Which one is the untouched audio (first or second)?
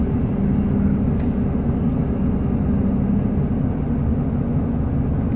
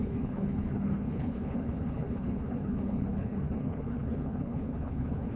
first